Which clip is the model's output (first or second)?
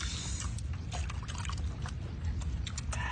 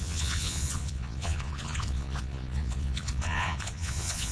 second